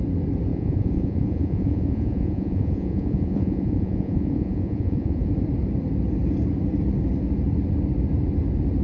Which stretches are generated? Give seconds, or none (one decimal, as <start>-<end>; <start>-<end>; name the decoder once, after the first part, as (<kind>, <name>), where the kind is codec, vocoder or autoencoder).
0.5-5.3 (vocoder, Vocos)